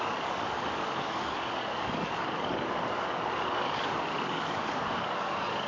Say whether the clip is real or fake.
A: fake